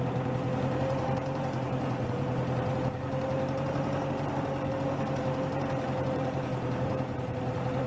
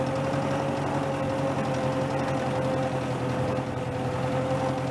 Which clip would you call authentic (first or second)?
second